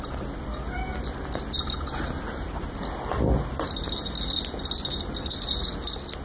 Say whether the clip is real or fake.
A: real